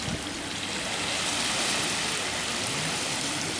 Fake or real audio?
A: real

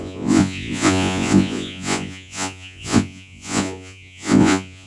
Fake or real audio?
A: fake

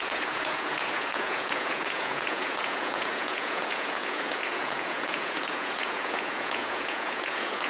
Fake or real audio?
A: fake